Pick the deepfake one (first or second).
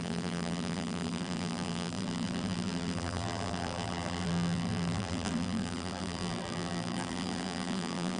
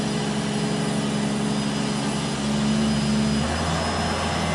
first